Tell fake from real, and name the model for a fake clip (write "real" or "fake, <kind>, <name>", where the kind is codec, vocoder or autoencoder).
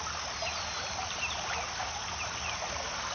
real